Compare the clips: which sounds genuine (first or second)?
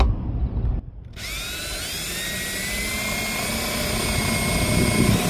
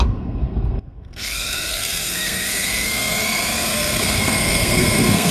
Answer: first